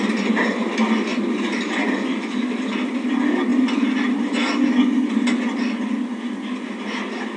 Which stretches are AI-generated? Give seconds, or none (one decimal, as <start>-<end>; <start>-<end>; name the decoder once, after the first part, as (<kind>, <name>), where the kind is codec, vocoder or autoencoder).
2.1-2.6 (autoencoder, DAC-VAE)